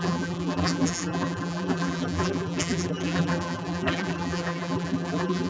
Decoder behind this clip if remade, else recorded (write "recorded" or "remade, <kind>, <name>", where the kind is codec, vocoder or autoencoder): remade, vocoder, BigVGAN v2